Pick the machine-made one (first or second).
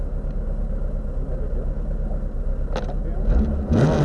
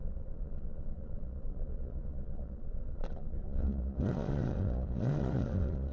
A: second